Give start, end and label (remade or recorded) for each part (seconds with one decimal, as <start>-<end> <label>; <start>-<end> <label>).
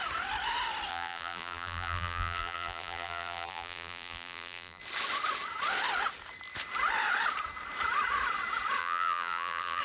0.0-0.9 recorded; 0.9-4.8 remade; 4.8-8.8 recorded; 8.8-9.8 remade